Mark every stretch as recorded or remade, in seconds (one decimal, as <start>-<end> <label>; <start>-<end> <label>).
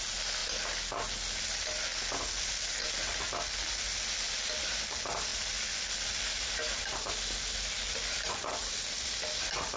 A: 0.0-5.3 recorded; 5.3-6.5 remade; 6.5-8.6 recorded; 8.6-9.1 remade; 9.1-9.8 recorded